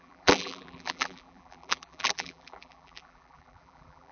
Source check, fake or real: fake